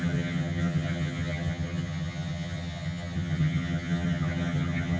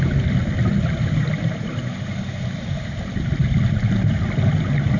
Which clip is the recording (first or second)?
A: second